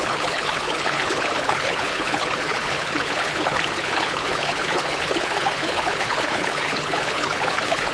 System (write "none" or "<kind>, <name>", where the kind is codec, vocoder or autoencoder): codec, HILCodec